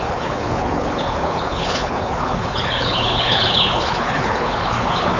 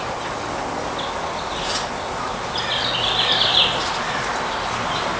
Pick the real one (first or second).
second